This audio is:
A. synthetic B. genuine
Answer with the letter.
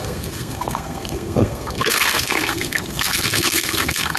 A